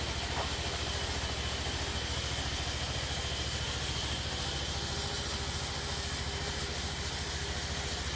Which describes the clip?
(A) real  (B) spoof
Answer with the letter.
A